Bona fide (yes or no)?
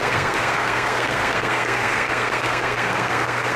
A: no